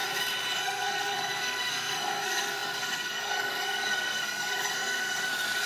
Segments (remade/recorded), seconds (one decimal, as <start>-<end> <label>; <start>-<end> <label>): 0.0-0.6 recorded; 0.6-5.7 remade